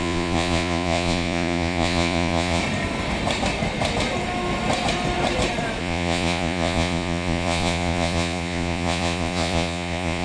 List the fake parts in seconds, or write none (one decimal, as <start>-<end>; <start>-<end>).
0.0-2.6; 5.8-10.2